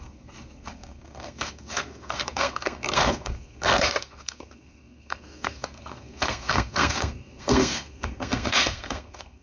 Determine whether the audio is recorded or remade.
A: remade